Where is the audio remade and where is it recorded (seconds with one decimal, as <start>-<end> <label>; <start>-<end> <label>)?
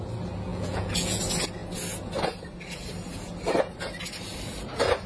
0.0-0.5 recorded; 0.5-1.2 remade; 1.2-5.1 recorded